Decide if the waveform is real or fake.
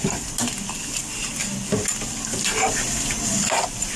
real